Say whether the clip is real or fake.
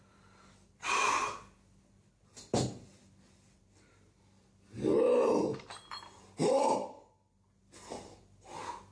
real